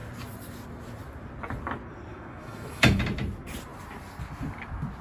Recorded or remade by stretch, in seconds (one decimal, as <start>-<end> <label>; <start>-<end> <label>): 0.0-2.1 recorded; 2.1-3.0 remade; 3.0-5.0 recorded